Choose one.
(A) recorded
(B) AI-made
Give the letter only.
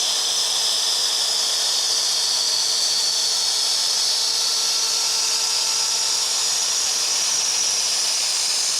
A